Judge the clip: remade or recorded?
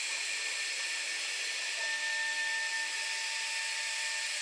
recorded